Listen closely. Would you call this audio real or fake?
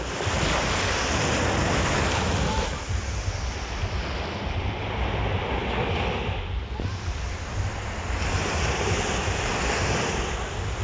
real